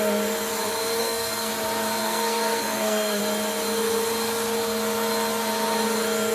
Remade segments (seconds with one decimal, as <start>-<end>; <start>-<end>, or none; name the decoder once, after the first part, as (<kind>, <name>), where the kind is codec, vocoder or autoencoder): 1.0-1.5 (codec, SNAC); 2.0-3.2